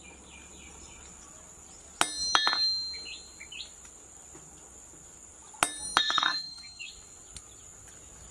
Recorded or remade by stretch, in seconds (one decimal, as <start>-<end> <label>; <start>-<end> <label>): 0.0-6.0 recorded; 6.0-6.9 remade; 6.9-8.3 recorded